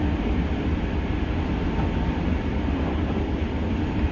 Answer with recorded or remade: recorded